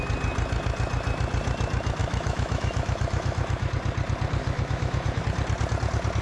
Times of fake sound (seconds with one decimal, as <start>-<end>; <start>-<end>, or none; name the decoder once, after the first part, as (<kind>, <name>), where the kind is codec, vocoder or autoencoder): 2.0-3.7 (autoencoder, DAC-VAE); 4.4-5.2